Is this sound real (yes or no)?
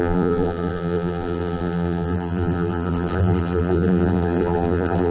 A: no